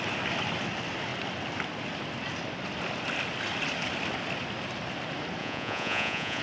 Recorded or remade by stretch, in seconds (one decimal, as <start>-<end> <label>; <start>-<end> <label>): 0.0-5.4 recorded; 5.4-6.4 remade